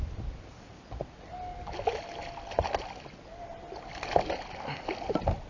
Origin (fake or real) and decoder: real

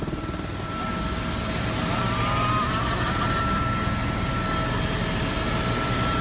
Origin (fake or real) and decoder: real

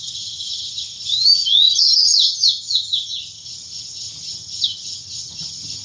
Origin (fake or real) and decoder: fake, vocoder, HiFi-GAN